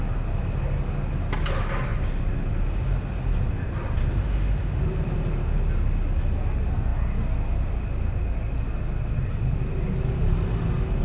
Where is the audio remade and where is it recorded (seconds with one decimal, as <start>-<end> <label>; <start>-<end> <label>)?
0.0-4.2 recorded; 4.2-4.8 remade; 4.8-11.0 recorded